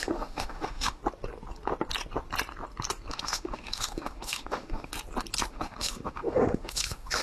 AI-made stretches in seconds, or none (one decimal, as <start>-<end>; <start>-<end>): 0.0-1.0; 3.1-4.9; 5.5-7.2